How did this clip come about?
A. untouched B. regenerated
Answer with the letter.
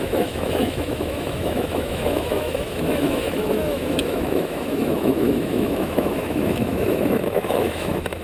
B